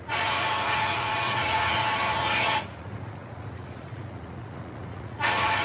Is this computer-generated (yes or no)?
yes